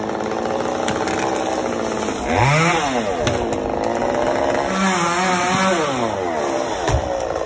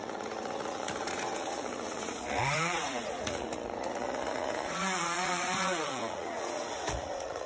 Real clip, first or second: first